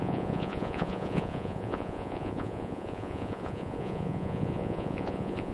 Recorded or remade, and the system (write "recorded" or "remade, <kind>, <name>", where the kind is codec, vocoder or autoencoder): remade, vocoder, Vocos